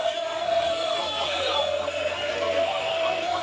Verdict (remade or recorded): remade